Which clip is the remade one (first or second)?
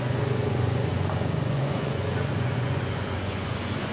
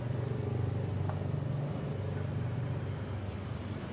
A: first